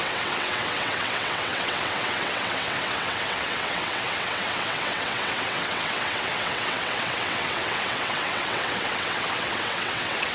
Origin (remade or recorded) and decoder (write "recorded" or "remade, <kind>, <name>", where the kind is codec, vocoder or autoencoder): remade, vocoder, WaveNeXt